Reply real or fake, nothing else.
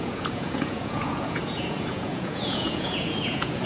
fake